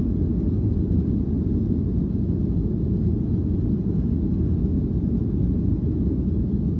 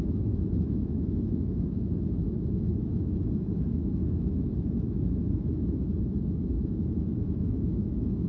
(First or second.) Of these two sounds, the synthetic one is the second